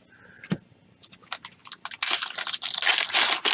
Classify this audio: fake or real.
real